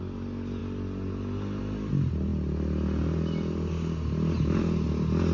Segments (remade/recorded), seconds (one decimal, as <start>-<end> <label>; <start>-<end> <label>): 0.0-5.3 recorded